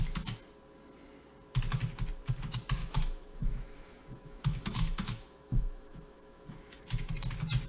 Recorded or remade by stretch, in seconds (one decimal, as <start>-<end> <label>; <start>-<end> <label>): 0.0-2.8 recorded; 2.8-6.9 remade; 6.9-7.7 recorded

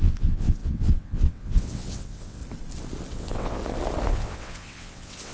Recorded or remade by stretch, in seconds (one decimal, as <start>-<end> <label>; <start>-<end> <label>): 0.0-2.4 remade; 2.4-3.1 recorded; 3.1-3.6 remade; 3.6-4.1 recorded; 4.1-5.3 remade

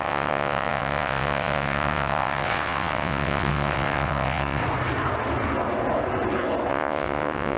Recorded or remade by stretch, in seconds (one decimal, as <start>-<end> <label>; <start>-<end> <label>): 0.0-4.6 remade; 4.6-6.7 recorded; 6.7-7.6 remade